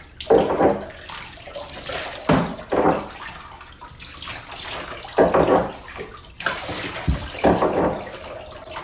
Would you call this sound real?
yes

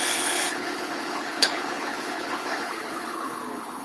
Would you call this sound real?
no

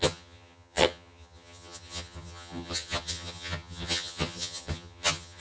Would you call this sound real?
no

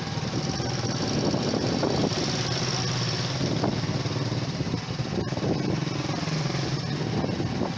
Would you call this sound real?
yes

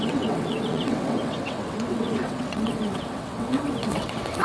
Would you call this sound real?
no